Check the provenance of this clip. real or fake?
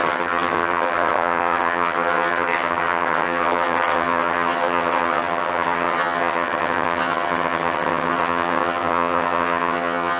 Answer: fake